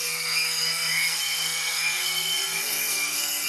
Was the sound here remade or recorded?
remade